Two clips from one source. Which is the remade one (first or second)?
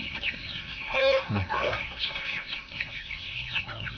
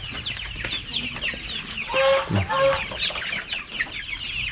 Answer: first